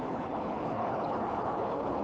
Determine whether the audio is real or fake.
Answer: fake